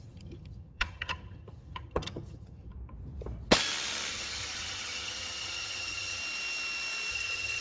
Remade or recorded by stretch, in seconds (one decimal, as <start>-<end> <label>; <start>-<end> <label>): 0.0-2.7 remade; 2.7-4.1 recorded; 4.1-6.2 remade; 6.2-7.1 recorded; 7.1-7.6 remade